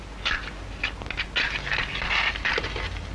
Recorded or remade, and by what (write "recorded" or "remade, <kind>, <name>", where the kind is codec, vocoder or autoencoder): recorded